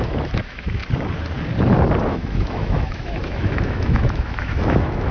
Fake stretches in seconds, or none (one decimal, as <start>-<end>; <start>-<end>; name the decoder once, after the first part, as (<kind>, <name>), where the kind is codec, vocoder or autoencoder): 0.0-0.8 (autoencoder, DAC-VAE); 2.1-5.1